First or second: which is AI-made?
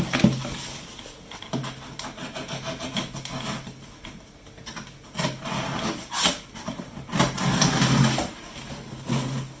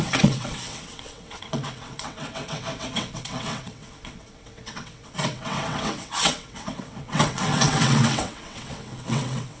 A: second